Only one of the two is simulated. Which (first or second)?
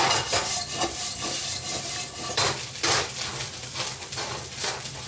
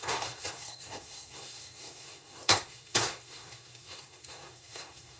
second